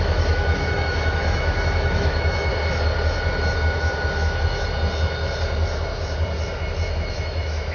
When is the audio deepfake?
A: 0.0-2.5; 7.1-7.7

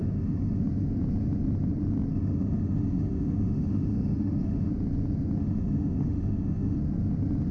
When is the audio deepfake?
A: 0.0-0.6; 2.1-4.7; 5.4-6.8

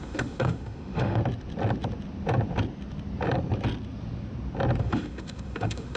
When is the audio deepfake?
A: 0.0-1.2; 4.8-6.0

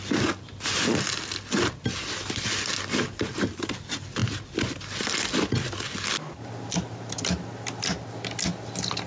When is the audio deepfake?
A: none